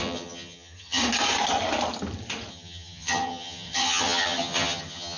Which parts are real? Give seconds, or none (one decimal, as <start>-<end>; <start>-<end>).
1.0-2.5